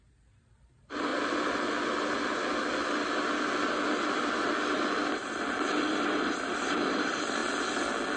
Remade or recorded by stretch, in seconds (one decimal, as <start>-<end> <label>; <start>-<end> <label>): 0.0-1.1 remade; 1.1-5.1 recorded; 5.1-7.4 remade; 7.4-8.2 recorded